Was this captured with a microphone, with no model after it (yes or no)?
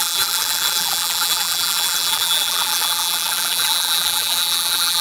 no